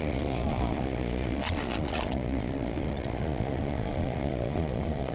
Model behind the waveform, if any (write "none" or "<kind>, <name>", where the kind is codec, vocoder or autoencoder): vocoder, Vocos